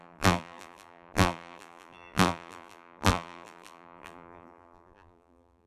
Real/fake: fake